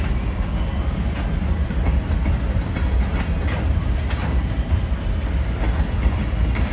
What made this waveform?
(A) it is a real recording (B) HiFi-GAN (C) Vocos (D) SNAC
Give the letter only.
A